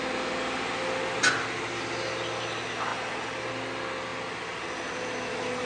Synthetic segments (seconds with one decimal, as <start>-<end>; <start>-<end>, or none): none